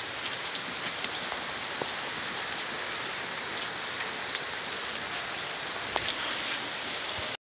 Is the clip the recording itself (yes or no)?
yes